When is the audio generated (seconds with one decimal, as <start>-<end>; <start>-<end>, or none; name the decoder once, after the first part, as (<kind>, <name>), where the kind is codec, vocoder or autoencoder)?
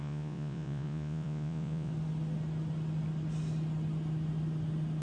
0.0-1.9 (vocoder, Vocos)